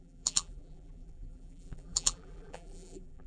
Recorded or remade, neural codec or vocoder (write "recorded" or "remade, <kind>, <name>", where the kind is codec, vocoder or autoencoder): remade, vocoder, BigVGAN v2